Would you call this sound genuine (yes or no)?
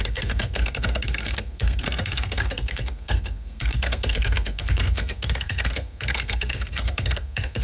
no